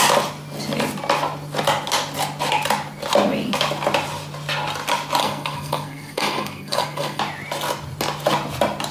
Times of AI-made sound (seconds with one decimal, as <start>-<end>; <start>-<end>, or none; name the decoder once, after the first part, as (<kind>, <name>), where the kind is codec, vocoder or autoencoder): 5.2-7.2 (codec, SNAC)